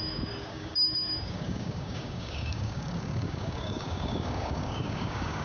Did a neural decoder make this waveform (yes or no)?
yes